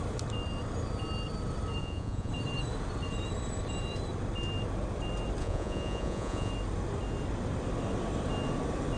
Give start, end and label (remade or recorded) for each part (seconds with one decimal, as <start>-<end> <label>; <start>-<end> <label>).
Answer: 0.0-1.8 recorded; 1.8-2.3 remade; 2.3-5.4 recorded; 5.4-6.5 remade; 6.5-9.0 recorded